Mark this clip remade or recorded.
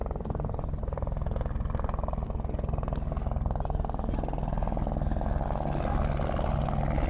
recorded